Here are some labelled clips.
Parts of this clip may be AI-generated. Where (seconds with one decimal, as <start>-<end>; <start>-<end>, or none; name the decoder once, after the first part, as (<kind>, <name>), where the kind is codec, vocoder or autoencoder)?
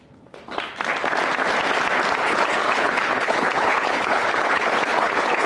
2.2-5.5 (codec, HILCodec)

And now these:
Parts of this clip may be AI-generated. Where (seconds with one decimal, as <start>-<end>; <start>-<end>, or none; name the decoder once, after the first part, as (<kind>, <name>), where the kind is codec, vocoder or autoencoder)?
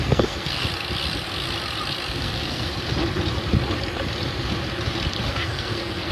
0.0-0.6 (codec, SNAC); 2.1-2.7; 5.3-6.1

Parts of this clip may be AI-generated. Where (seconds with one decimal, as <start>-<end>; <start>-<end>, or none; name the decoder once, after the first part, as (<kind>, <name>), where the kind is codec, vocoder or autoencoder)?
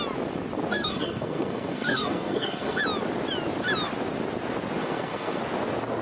0.7-2.8 (codec, SNAC); 4.8-5.4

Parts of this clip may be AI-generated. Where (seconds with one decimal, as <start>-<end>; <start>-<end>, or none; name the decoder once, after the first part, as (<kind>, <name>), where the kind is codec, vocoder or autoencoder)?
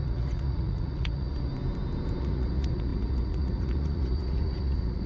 0.0-1.5 (vocoder, Vocos); 2.2-5.1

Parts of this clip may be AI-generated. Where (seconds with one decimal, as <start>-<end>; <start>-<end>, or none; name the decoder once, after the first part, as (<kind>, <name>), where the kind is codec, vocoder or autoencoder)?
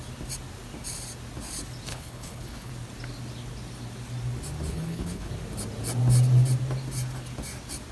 1.9-2.7 (codec, HILCodec); 4.7-5.3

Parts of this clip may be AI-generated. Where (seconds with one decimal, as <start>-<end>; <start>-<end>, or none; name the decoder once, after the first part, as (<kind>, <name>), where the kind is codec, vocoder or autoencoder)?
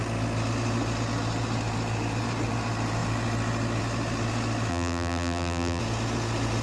4.7-5.8 (vocoder, BigVGAN v2)